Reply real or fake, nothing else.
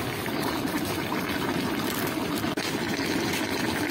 real